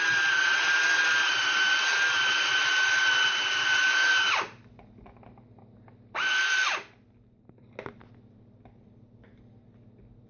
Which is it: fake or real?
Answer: real